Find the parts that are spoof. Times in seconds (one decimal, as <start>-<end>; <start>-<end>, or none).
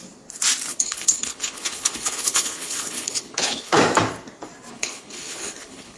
0.7-3.8; 4.7-6.0